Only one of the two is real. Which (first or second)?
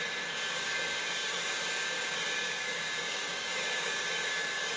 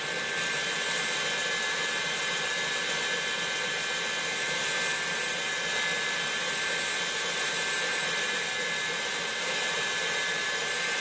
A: second